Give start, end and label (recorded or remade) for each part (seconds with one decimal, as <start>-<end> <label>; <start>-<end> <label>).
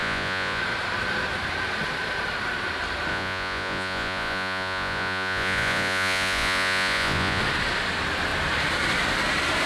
0.0-0.6 remade; 0.6-3.1 recorded; 3.1-7.4 remade; 7.4-9.7 recorded